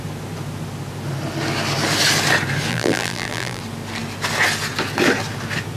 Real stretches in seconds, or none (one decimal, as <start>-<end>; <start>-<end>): 0.0-2.7; 3.6-5.8